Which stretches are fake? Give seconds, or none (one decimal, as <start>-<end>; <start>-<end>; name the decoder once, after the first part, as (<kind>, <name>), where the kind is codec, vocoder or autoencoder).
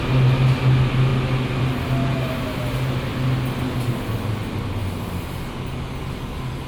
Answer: none